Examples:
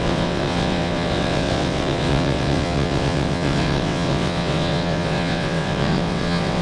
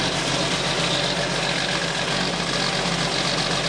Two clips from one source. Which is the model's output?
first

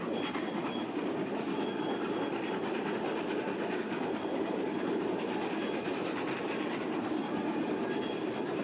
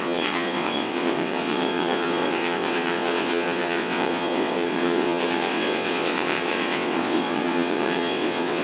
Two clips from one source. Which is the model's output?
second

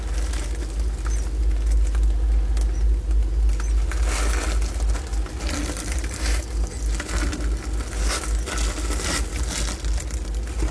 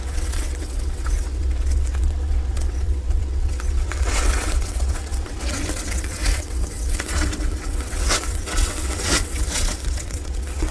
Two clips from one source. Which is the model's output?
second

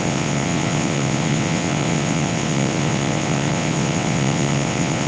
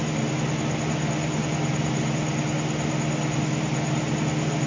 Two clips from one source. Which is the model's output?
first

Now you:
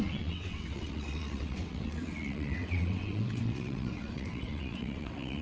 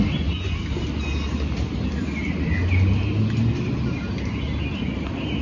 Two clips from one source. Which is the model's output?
first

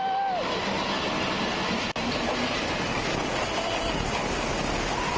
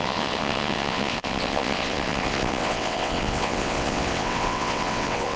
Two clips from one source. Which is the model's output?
second